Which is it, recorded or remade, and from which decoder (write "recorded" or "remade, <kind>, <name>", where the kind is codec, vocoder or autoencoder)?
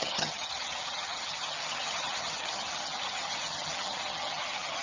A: remade, vocoder, HiFi-GAN